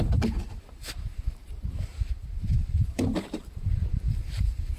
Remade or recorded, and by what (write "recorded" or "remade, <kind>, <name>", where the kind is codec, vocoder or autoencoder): remade, vocoder, BigVGAN v2